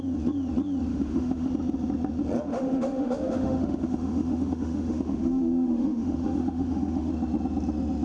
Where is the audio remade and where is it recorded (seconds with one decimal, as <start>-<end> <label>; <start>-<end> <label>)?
0.0-0.9 recorded; 0.9-1.5 remade; 1.5-2.5 recorded; 2.5-7.1 remade; 7.1-8.0 recorded